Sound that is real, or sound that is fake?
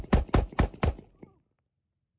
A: real